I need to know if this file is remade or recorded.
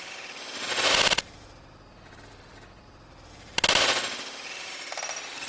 recorded